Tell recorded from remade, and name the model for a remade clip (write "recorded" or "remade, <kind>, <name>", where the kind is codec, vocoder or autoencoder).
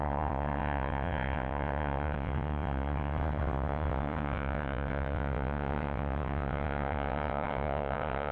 remade, vocoder, WaveNeXt